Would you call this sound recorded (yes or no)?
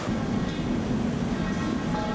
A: yes